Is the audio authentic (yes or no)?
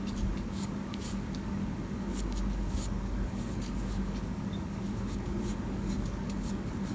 no